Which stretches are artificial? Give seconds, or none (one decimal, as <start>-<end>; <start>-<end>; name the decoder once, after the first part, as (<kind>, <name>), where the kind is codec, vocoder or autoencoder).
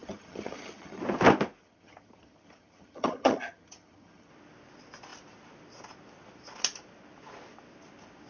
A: 0.0-1.0 (vocoder, HiFi-GAN); 1.6-4.3